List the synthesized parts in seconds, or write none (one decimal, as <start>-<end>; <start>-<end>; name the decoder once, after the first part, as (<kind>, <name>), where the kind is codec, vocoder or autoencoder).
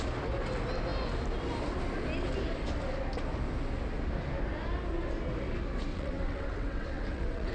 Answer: 5.9-7.5 (vocoder, WaveNeXt)